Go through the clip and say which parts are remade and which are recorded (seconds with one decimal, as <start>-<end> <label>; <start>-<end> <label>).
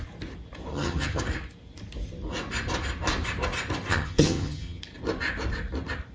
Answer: 0.0-0.7 recorded; 0.7-1.2 remade; 1.2-3.9 recorded; 3.9-4.8 remade; 4.8-6.1 recorded